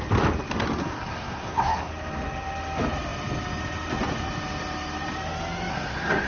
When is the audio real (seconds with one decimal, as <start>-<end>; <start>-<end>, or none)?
0.0-0.8; 1.9-5.7